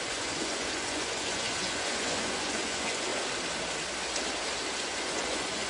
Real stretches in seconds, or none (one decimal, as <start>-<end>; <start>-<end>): 3.1-4.8